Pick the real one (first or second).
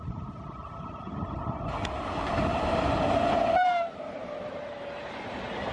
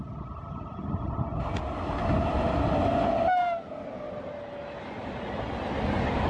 second